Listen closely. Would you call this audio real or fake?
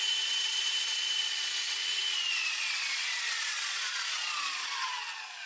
fake